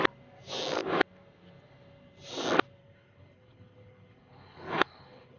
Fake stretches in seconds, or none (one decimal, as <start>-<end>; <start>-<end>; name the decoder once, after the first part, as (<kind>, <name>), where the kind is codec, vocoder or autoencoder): 2.8-5.4 (codec, HILCodec)